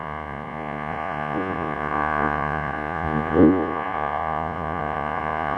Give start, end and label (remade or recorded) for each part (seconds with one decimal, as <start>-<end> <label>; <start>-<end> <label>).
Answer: 0.0-5.6 remade